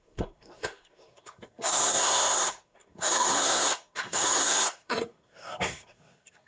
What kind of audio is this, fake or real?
fake